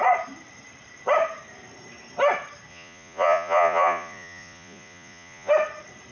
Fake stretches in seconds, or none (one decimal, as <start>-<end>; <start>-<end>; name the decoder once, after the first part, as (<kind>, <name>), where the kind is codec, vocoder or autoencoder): 2.7-5.5 (vocoder, Vocos)